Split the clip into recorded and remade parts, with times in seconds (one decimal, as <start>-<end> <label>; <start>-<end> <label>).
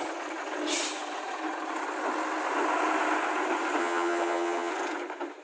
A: 0.0-3.8 recorded; 3.8-4.7 remade; 4.7-5.4 recorded